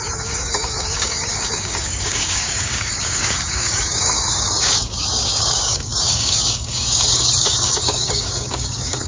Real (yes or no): no